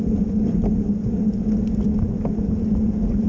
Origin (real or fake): real